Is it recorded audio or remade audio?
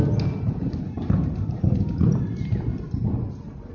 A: recorded